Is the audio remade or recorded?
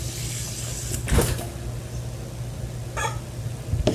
recorded